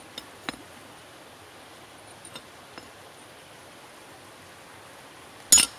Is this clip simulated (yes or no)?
no